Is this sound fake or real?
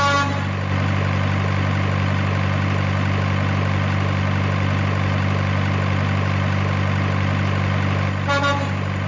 real